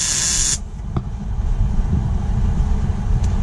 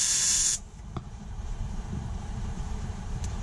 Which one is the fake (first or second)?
second